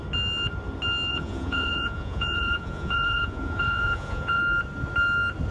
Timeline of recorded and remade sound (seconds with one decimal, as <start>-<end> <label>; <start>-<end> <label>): 0.0-1.1 recorded; 1.1-4.4 remade; 4.4-5.5 recorded